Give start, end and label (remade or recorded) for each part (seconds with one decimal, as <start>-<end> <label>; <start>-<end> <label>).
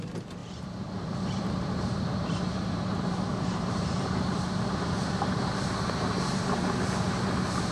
0.0-7.7 remade